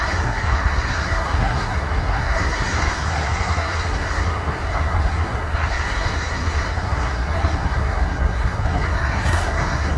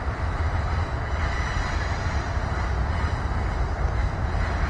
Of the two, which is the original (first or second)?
second